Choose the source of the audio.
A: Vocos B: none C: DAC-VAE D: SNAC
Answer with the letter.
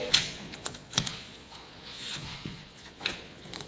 A